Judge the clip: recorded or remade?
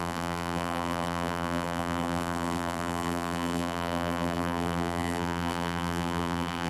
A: remade